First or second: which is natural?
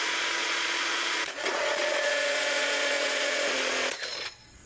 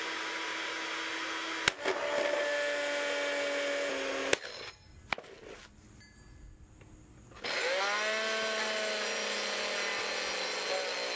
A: second